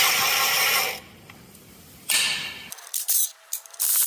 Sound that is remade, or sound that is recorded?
remade